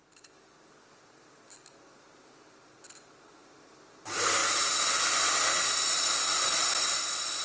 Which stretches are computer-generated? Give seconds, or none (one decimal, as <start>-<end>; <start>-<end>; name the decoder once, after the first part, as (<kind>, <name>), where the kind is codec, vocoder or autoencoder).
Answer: none

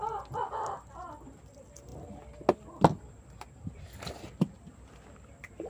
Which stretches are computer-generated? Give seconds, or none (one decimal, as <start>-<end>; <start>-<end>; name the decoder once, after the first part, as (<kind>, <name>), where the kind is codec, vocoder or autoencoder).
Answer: none

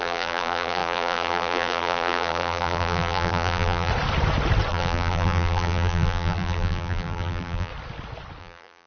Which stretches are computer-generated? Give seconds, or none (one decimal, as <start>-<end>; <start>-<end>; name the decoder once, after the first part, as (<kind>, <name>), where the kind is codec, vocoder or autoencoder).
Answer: 0.0-3.9 (vocoder, BigVGAN v2); 4.7-7.7; 8.4-8.9

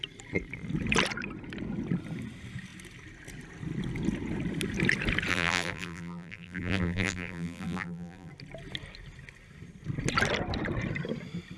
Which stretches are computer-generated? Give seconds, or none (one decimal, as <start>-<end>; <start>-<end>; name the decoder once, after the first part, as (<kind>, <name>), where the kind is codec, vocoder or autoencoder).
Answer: 5.3-8.3 (vocoder, BigVGAN v2)

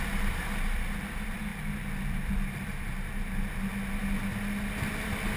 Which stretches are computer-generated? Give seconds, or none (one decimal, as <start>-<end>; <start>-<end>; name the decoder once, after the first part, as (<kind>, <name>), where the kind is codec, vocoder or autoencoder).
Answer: 0.0-1.5 (vocoder, BigVGAN v2); 4.7-5.4

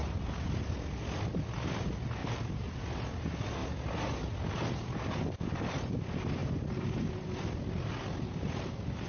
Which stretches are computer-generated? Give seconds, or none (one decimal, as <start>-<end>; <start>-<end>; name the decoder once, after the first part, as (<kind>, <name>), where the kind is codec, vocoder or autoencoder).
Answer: 0.0-0.6 (vocoder, BigVGAN v2); 2.2-2.8